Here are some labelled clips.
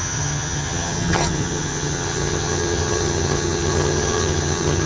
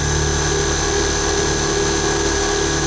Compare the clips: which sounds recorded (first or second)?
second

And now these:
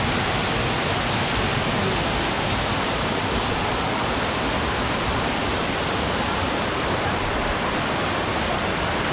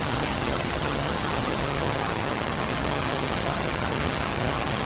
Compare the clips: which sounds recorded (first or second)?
first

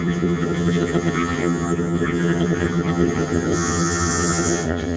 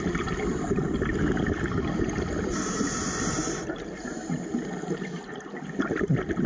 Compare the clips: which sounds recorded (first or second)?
second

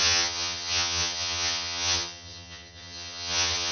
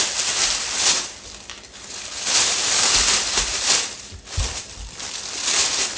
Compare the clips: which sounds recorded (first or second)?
second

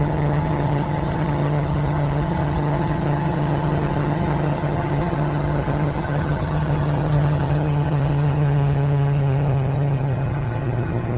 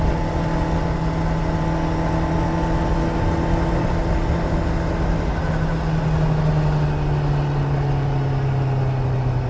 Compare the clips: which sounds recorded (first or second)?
second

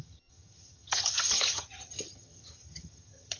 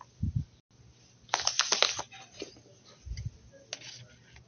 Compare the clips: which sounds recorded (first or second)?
second